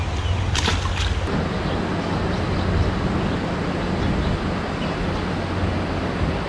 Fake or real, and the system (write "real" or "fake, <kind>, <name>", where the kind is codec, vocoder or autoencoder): real